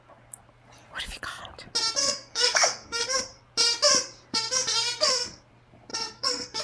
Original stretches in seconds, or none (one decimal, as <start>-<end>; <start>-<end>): 0.0-2.0; 3.2-4.3; 5.4-5.9